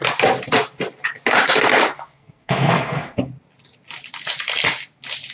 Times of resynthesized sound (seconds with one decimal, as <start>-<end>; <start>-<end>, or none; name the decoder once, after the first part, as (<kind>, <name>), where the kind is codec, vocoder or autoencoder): 1.9-3.3 (codec, SNAC)